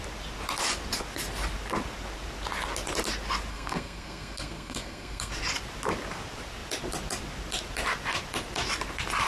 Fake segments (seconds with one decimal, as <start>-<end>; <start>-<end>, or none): 3.5-5.3